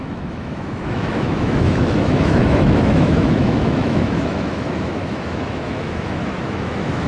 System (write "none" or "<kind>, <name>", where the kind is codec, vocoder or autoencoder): autoencoder, DAC-VAE